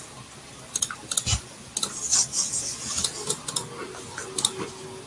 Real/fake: real